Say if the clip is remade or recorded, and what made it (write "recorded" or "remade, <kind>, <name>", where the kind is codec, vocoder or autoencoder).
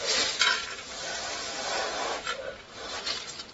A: recorded